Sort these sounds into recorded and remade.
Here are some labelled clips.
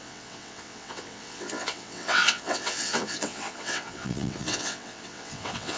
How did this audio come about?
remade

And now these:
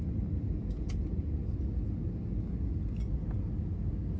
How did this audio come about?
recorded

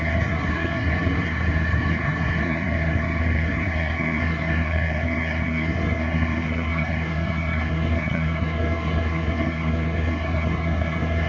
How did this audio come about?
remade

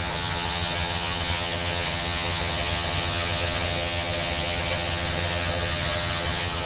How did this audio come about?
remade